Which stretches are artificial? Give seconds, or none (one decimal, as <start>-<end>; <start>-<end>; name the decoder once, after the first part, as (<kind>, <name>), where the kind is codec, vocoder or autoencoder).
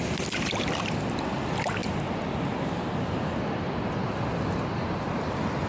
none